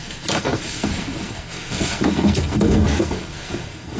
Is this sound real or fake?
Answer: fake